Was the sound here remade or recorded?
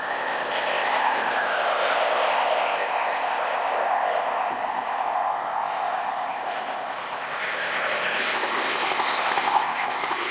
remade